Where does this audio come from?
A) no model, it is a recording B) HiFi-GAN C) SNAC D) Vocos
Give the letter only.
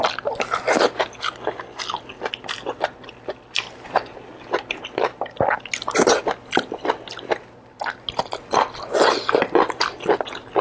A